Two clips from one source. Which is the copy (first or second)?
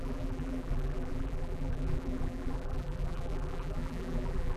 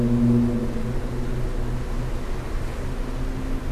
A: first